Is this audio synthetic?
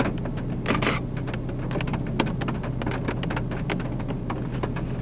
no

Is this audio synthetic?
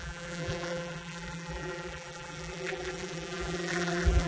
yes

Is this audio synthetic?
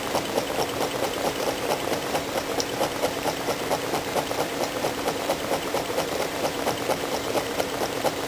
yes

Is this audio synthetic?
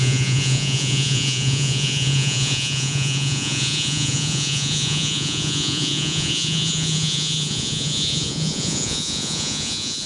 yes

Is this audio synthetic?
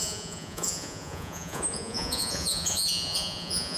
yes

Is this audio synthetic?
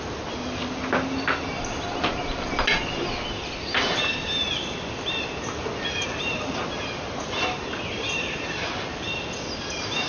no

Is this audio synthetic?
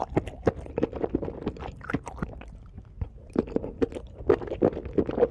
no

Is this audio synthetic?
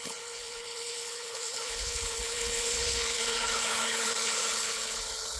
yes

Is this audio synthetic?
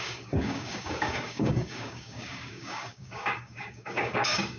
yes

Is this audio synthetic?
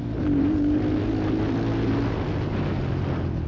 no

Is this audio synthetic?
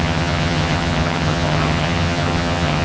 yes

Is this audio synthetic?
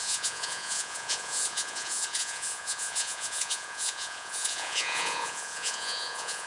yes